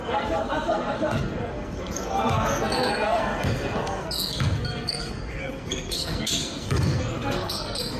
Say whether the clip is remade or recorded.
remade